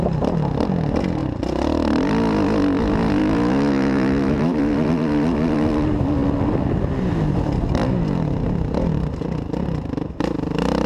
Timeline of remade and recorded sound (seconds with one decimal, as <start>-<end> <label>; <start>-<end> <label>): 0.0-3.2 recorded; 3.2-4.6 remade; 4.6-10.9 recorded